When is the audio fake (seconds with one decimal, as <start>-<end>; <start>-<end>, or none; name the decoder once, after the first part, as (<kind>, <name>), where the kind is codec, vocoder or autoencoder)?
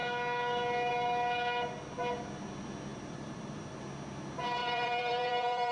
2.9-3.8 (vocoder, BigVGAN v2); 4.6-5.7